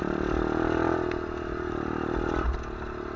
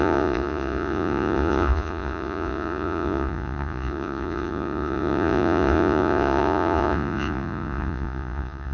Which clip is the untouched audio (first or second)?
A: first